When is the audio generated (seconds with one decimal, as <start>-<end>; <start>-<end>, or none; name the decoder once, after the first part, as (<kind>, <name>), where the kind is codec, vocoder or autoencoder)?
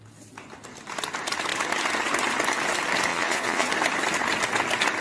3.1-3.7 (vocoder, Vocos)